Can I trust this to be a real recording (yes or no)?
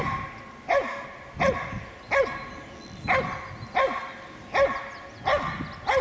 yes